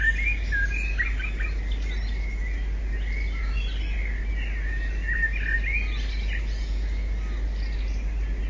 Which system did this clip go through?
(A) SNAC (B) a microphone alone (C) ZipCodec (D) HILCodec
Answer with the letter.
B